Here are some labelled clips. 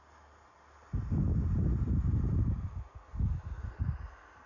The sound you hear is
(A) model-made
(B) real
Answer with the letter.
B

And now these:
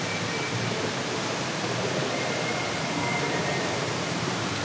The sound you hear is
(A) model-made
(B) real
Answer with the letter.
A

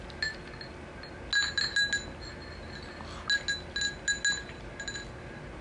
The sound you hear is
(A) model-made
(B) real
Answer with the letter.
B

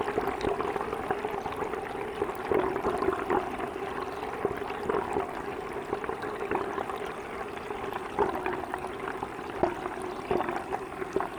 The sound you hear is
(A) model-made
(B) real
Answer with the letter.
B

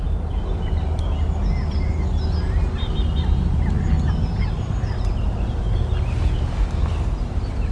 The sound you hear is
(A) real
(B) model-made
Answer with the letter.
A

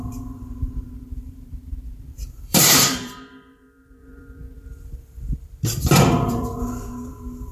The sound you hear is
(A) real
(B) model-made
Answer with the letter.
B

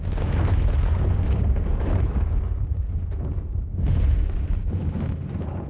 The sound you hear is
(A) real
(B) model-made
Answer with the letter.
A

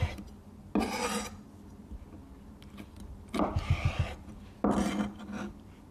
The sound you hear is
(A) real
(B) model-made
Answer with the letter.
A